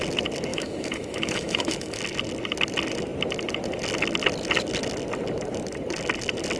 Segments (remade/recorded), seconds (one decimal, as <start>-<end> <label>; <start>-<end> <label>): 0.0-0.5 recorded; 0.5-2.0 remade; 2.0-6.6 recorded